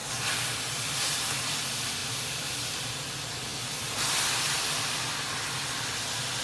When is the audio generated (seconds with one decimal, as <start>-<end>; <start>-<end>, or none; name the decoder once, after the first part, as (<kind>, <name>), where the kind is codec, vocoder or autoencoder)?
2.0-3.1 (vocoder, BigVGAN v2)